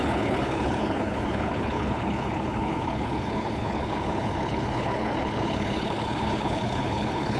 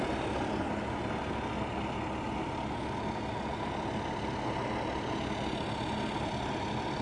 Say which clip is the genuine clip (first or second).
second